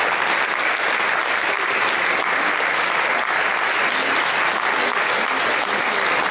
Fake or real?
real